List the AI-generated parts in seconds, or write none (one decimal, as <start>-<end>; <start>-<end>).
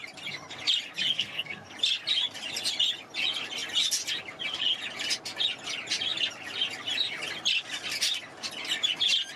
1.1-1.7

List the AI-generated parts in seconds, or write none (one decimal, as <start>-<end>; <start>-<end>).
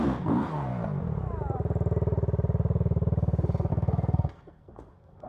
0.0-0.7; 3.7-5.3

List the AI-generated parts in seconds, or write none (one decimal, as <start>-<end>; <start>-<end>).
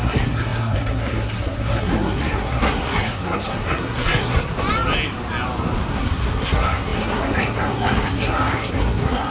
0.0-4.5; 5.9-9.3